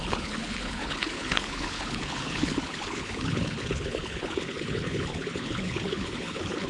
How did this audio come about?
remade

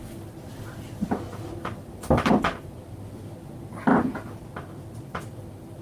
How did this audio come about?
recorded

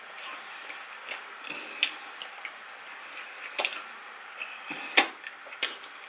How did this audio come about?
recorded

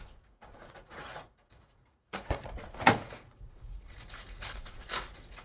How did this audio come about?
remade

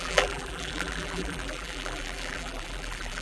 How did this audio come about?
remade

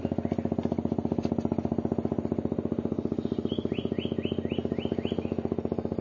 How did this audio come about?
recorded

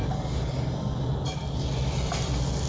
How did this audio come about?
recorded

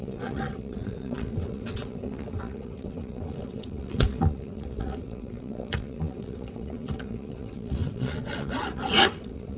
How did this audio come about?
remade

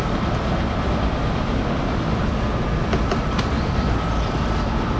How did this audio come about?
recorded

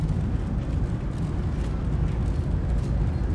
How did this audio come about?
recorded